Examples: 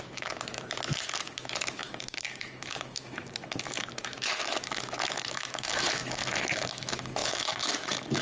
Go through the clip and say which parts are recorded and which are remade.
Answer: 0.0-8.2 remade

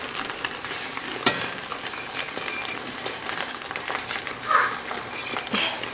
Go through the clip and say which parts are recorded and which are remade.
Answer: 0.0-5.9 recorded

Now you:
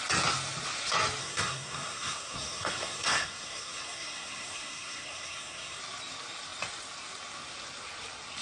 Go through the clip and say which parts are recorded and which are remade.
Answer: 0.0-1.2 recorded; 1.2-5.8 remade; 5.8-8.4 recorded